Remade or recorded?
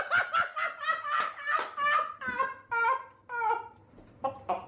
recorded